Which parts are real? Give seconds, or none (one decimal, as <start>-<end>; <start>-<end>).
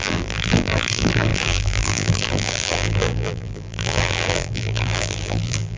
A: none